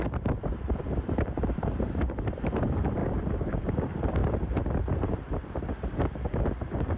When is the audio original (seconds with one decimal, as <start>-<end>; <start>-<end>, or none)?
3.0-3.7; 4.2-6.4